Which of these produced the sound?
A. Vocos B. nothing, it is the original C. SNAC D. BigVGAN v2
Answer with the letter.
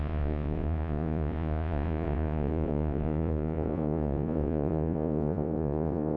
A